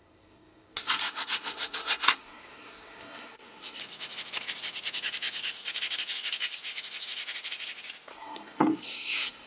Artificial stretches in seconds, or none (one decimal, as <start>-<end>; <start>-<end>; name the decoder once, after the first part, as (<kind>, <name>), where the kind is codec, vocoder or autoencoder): 0.0-3.8 (codec, SNAC); 8.1-9.5

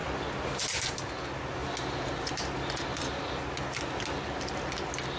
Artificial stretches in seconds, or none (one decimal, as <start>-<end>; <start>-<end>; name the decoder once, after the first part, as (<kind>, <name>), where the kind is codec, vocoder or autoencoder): none

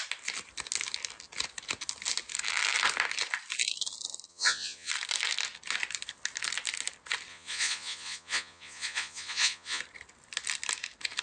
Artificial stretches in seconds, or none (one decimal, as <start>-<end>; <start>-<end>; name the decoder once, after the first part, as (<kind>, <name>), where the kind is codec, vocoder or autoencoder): 4.3-4.9 (vocoder, Vocos); 7.3-9.8

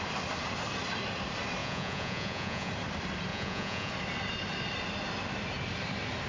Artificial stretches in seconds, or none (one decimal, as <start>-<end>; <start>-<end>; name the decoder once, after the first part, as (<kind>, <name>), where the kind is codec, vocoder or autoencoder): 1.6-2.7 (vocoder, Vocos); 3.3-3.9

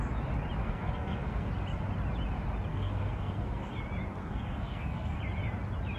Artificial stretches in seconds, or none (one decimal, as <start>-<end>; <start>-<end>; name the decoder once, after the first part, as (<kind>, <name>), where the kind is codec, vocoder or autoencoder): 0.6-1.5 (codec, SNAC); 2.7-3.7; 4.2-5.2

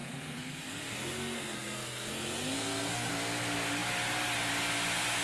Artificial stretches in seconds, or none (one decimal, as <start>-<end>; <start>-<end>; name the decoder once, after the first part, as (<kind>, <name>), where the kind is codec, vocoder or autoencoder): 0.0-3.1 (codec, SNAC)

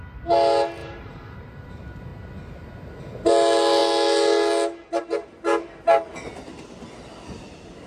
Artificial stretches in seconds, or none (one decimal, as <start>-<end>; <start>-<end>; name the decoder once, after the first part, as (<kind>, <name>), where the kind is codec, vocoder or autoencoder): 0.8-1.7 (vocoder, BigVGAN v2)

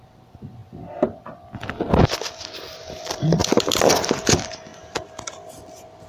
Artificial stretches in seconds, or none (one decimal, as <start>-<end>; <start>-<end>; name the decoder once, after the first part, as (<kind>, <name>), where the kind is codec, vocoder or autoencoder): 0.0-0.6 (vocoder, BigVGAN v2); 1.9-4.7; 5.5-6.1